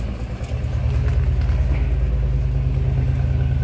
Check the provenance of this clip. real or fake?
real